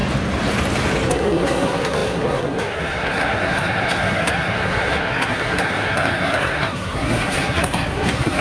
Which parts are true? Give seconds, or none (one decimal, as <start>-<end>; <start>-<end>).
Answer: 0.0-1.1